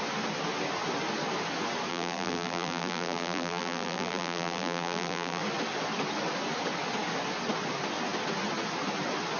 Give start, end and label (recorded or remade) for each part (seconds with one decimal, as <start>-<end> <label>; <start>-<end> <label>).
0.0-1.9 recorded; 1.9-5.4 remade; 5.4-9.4 recorded